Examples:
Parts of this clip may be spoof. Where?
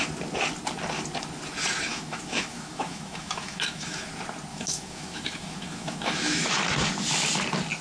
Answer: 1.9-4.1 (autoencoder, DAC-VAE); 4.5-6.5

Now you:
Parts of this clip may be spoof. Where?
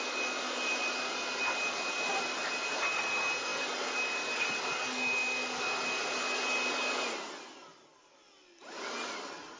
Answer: none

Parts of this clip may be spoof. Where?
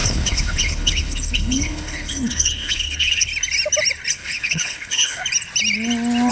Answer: 0.0-3.3 (codec, HILCodec); 4.1-5.2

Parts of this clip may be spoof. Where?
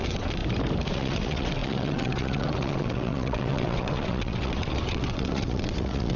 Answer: 0.0-0.4 (vocoder, WaveNeXt); 0.9-6.2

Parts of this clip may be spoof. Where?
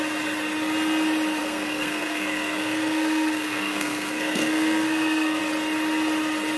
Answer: 1.4-5.4 (codec, SNAC)